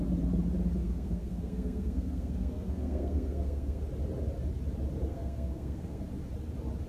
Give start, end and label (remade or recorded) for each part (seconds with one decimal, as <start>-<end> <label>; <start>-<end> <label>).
0.0-0.8 recorded; 0.8-3.8 remade; 3.8-5.1 recorded; 5.1-6.0 remade; 6.0-6.9 recorded